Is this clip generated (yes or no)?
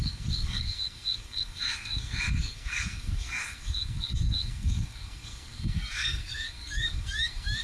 yes